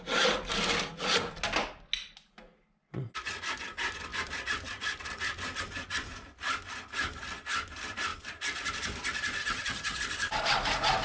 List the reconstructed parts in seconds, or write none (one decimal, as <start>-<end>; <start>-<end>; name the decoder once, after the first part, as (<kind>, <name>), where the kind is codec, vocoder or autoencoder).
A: 9.4-10.0 (vocoder, HiFi-GAN)